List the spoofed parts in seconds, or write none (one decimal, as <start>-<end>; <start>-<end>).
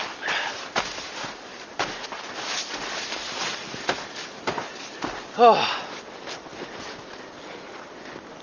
6.5-7.9